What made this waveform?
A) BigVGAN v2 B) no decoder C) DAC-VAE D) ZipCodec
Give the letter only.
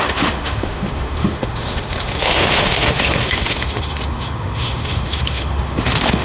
C